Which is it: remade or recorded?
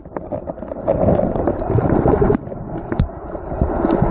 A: recorded